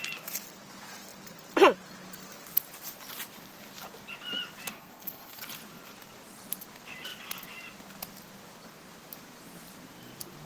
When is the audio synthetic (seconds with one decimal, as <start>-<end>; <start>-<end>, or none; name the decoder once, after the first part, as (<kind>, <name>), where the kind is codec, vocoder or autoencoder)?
4.7-5.4 (codec, SNAC)